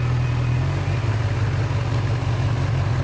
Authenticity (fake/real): real